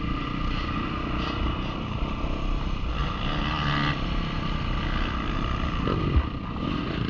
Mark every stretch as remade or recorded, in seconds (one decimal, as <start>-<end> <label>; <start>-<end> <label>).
0.0-3.0 remade; 3.0-6.4 recorded; 6.4-7.1 remade